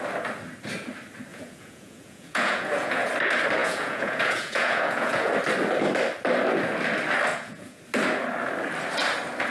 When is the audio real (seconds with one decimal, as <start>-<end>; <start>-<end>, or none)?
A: 0.0-1.3; 3.1-3.6; 5.3-7.3; 7.8-9.5